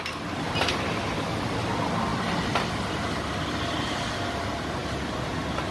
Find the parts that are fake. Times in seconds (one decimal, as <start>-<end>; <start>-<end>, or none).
none